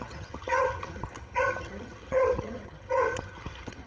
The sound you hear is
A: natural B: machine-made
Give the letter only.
B